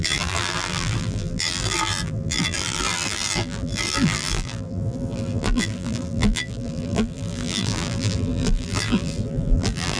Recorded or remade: remade